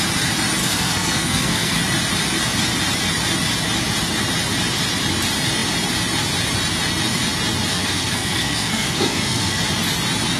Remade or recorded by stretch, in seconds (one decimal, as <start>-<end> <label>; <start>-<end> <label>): 0.0-0.6 recorded; 0.6-1.8 remade; 1.8-7.7 recorded; 7.7-9.6 remade; 9.6-10.4 recorded